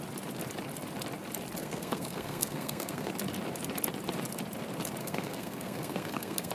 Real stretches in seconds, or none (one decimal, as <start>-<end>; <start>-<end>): 0.0-1.6; 3.1-5.0